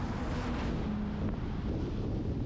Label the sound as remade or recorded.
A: recorded